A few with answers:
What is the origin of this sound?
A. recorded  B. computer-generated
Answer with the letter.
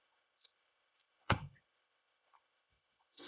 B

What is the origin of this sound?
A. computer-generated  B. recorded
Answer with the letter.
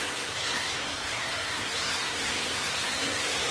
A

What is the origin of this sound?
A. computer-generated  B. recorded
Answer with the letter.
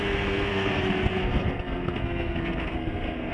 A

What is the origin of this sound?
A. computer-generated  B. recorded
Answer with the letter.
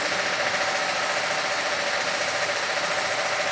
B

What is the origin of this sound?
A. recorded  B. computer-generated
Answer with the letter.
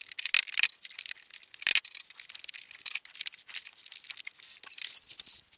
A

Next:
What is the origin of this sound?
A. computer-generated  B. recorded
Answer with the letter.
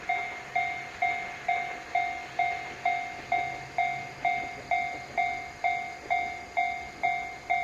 B